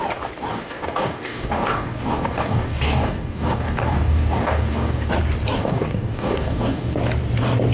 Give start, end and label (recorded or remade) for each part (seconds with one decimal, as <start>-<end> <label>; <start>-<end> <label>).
0.0-0.5 recorded; 0.5-5.1 remade; 5.1-5.6 recorded; 5.6-7.0 remade; 7.0-7.7 recorded